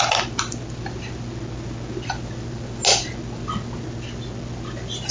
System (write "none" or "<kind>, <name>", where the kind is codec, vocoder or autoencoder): none